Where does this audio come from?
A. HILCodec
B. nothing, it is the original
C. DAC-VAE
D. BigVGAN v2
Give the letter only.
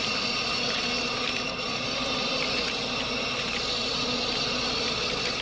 B